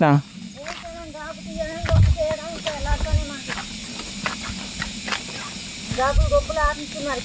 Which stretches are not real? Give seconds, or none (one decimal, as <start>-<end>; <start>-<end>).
none